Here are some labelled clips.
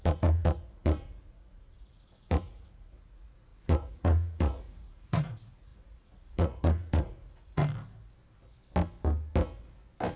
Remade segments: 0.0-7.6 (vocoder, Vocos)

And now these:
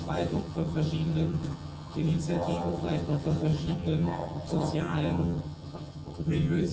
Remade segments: 0.0-6.7 (vocoder, HiFi-GAN)

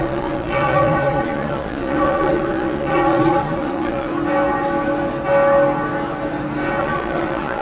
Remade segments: 0.0-4.1 (vocoder, Vocos); 6.8-7.6